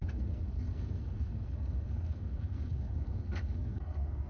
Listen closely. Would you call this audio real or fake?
fake